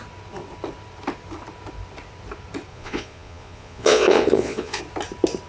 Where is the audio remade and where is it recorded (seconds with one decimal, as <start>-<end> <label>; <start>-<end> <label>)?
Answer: 0.0-2.7 recorded; 2.7-4.8 remade; 4.8-5.5 recorded